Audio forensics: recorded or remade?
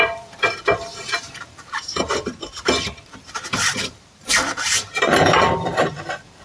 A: remade